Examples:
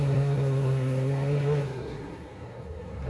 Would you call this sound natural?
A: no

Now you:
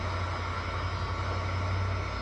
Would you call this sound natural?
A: yes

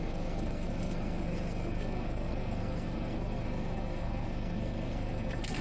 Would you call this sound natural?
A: no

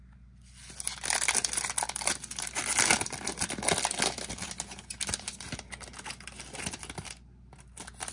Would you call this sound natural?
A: yes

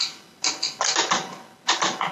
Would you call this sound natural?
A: yes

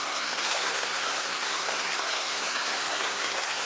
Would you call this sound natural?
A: no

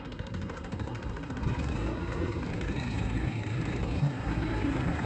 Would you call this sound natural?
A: no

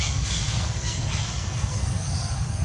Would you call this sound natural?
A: no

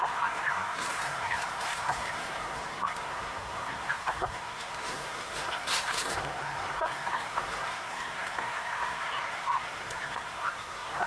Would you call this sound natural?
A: no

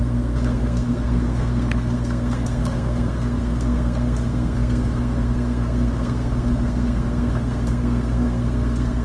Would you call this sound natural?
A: no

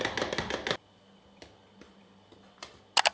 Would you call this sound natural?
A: yes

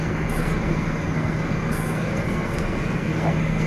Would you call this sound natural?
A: no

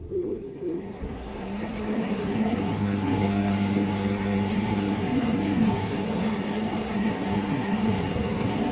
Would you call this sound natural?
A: no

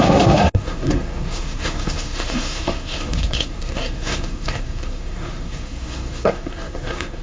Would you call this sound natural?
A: no